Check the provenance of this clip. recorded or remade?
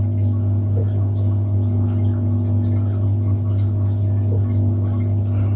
recorded